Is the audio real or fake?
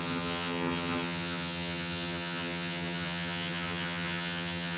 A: fake